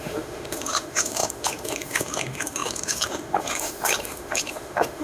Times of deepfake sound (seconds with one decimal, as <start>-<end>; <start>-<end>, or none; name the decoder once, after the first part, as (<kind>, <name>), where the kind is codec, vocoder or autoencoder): 0.0-5.0 (autoencoder, DAC-VAE)